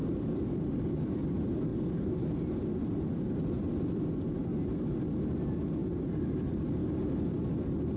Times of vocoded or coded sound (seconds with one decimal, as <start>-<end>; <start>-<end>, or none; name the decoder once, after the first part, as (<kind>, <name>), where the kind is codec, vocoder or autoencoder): 5.8-6.6 (vocoder, BigVGAN v2)